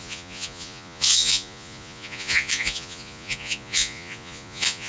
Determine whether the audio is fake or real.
fake